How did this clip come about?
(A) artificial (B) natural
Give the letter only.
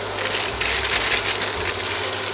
B